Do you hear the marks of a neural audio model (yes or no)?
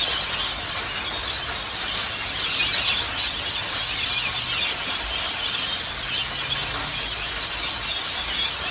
no